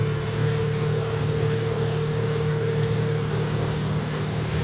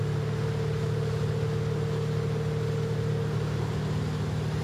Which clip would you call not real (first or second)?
first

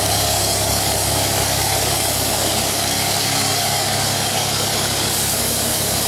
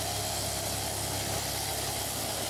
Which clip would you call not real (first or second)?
first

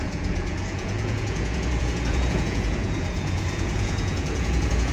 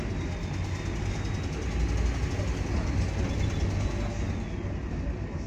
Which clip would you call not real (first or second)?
first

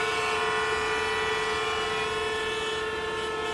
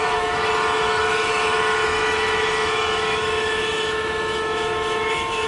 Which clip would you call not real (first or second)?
second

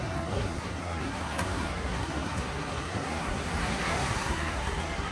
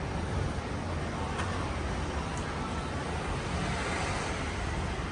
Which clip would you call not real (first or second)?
first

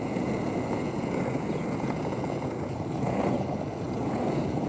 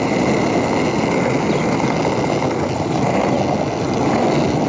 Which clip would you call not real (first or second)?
first